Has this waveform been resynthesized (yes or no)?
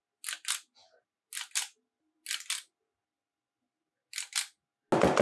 no